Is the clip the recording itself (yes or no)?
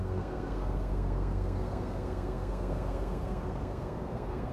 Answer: no